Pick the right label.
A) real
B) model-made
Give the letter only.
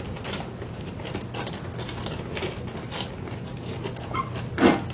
A